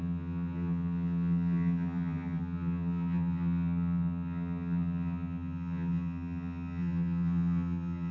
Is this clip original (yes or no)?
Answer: no